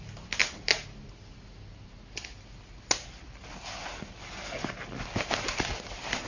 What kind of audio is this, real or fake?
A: real